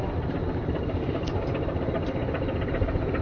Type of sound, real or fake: real